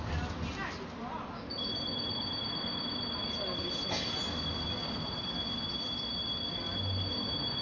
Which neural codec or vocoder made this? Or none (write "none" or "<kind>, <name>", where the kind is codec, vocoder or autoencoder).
none